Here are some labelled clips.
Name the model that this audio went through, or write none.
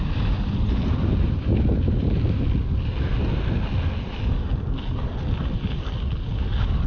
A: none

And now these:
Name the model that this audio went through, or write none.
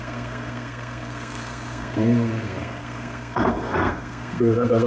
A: codec, SNAC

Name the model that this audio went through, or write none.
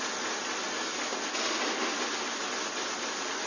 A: none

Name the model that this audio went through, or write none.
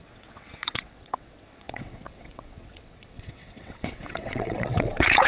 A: vocoder, WaveNeXt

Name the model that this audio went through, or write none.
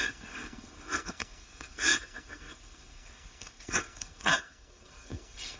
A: codec, SNAC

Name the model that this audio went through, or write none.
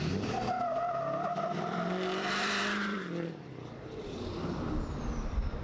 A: vocoder, BigVGAN v2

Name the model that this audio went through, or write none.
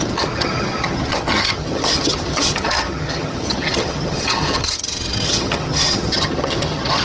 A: vocoder, HiFi-GAN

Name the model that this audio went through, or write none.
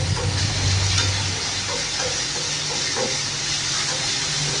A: none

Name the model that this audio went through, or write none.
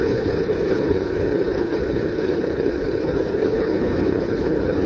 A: codec, HILCodec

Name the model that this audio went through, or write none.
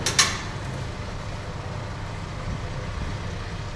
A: none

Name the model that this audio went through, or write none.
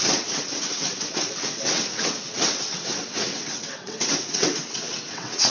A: vocoder, WaveNeXt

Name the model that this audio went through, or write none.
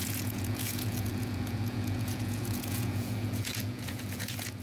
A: vocoder, Vocos